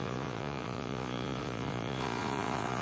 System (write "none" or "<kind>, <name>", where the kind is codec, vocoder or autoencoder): vocoder, Vocos